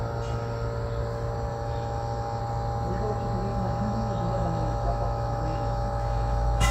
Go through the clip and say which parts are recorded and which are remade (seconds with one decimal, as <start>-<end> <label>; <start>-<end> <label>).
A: 0.0-1.5 recorded; 1.5-2.4 remade; 2.4-3.5 recorded; 3.5-6.7 remade